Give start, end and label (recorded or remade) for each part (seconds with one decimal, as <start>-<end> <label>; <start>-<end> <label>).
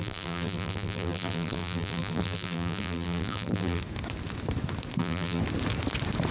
0.0-3.8 remade; 3.8-5.0 recorded; 5.0-5.4 remade; 5.4-6.3 recorded